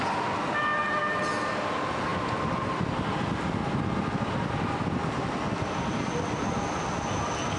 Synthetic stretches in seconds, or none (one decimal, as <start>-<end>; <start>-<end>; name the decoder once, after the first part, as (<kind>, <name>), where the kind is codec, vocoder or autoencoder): none